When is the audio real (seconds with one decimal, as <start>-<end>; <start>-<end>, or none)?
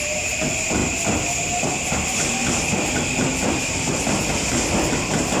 0.0-5.4